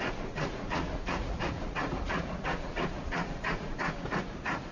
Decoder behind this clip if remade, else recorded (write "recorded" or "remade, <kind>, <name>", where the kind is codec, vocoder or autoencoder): remade, vocoder, Vocos